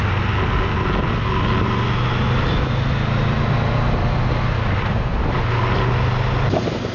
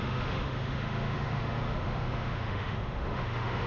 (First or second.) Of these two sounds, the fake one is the second